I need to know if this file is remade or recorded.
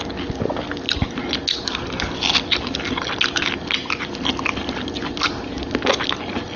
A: recorded